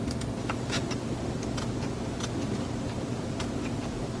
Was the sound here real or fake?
real